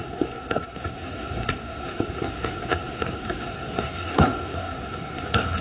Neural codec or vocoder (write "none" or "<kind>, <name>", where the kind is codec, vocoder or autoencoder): codec, SNAC